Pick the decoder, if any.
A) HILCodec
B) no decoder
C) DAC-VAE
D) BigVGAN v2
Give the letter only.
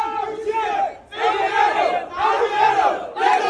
B